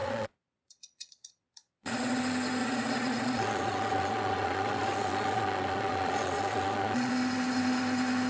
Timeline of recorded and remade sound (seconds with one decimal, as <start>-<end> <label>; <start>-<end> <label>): 0.0-2.2 remade; 2.2-2.6 recorded; 2.6-7.1 remade; 7.1-8.3 recorded